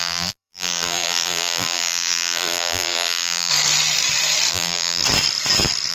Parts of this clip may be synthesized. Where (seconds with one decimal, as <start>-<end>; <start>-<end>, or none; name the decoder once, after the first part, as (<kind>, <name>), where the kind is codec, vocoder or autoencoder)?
0.0-3.5 (vocoder, BigVGAN v2); 4.5-5.0